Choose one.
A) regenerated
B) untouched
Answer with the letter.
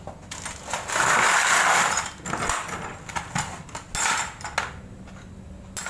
B